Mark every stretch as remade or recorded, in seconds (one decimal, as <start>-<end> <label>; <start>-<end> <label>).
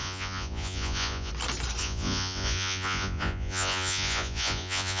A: 0.0-1.3 remade; 1.3-1.8 recorded; 1.8-5.0 remade